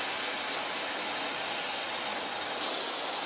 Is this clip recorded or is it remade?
recorded